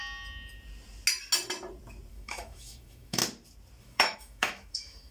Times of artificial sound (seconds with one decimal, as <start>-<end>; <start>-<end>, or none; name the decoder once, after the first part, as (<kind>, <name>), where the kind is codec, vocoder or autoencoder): 2.1-3.2 (autoencoder, DAC-VAE); 3.8-5.1